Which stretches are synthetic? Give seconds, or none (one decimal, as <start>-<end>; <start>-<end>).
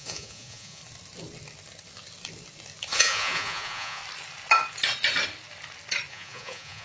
0.0-0.8; 2.9-4.0; 6.1-6.8